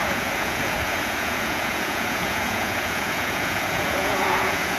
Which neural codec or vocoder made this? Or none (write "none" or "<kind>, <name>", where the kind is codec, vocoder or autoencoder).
vocoder, Vocos